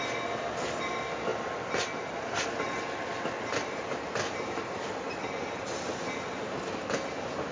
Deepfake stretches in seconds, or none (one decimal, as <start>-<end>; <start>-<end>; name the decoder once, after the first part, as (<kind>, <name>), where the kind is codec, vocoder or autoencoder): none